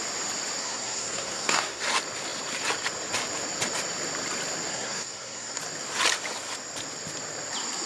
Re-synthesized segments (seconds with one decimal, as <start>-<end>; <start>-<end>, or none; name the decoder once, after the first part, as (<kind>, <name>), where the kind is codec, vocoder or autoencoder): 0.6-1.8 (codec, SNAC); 4.7-5.6